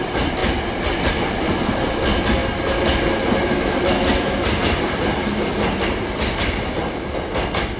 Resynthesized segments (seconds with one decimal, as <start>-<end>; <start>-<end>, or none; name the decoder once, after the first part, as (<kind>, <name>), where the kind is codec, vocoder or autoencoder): none